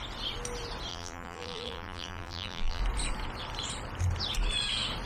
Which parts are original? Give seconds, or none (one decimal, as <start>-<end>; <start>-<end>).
0.0-0.9; 2.8-5.1